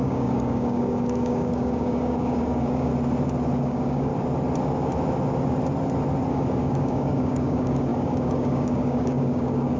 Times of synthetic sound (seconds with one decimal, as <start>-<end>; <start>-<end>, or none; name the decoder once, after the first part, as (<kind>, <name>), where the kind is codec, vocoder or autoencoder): 0.0-2.9 (codec, DAC); 3.6-4.1; 6.3-9.8